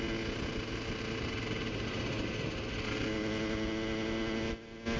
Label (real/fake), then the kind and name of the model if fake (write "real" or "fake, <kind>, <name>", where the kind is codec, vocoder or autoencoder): real